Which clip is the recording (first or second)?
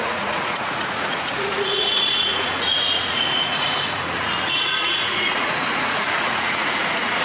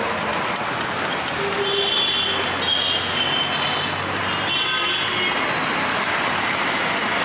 second